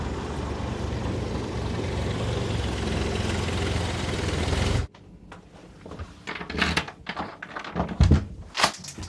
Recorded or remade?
recorded